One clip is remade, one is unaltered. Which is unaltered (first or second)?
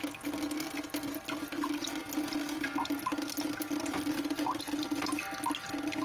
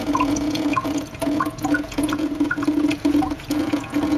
first